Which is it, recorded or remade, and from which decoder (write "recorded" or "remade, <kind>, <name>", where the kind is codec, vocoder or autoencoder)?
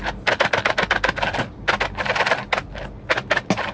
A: recorded